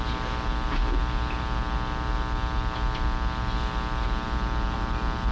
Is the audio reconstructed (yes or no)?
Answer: no